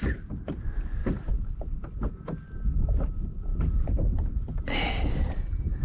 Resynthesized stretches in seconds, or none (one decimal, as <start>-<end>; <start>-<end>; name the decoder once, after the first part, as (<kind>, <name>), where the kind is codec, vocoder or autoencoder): 0.0-1.0 (vocoder, BigVGAN v2); 2.8-5.8